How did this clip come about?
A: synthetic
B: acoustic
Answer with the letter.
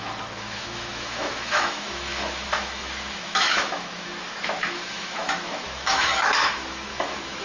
A